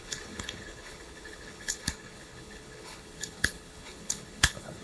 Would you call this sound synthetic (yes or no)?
yes